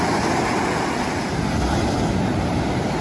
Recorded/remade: recorded